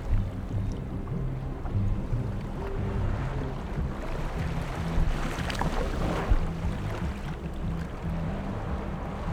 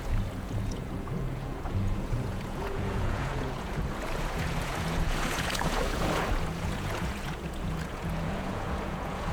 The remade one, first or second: second